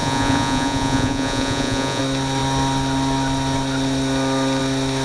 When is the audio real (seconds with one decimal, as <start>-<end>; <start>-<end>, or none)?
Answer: 2.0-5.0